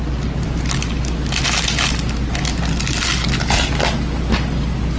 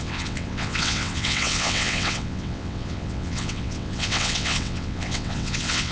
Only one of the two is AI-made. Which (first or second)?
second